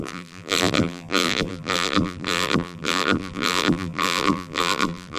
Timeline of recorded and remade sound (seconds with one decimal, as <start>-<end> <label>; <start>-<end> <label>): 0.0-5.2 remade